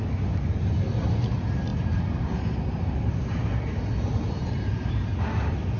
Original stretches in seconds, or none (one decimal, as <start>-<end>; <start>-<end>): 0.0-5.8